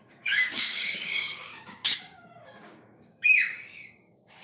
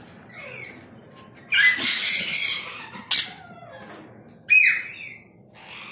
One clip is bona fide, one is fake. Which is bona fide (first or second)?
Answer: second